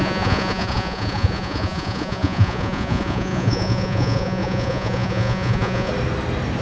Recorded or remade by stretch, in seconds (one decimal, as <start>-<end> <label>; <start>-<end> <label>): 0.0-5.9 remade; 5.9-6.6 recorded

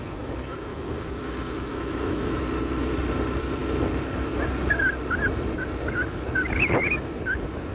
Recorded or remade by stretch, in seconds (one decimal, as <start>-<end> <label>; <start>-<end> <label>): 0.0-1.7 recorded; 1.7-2.4 remade; 2.4-7.7 recorded

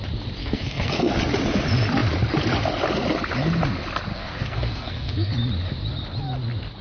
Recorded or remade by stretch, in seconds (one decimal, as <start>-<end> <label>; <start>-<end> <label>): 0.0-0.4 recorded; 0.4-1.1 remade; 1.1-4.1 recorded; 4.1-5.3 remade; 5.3-6.8 recorded

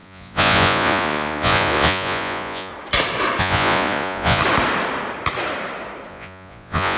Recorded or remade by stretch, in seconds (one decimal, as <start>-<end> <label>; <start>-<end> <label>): 0.0-2.7 remade; 2.7-3.4 recorded; 3.4-4.4 remade; 4.4-6.1 recorded; 6.1-7.0 remade

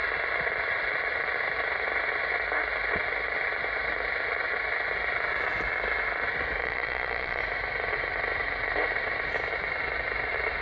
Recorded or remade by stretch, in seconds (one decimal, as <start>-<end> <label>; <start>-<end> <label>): 0.0-6.6 recorded; 6.6-7.4 remade; 7.4-10.6 recorded